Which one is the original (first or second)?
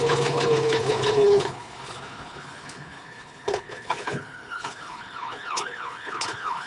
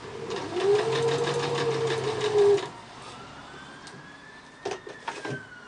second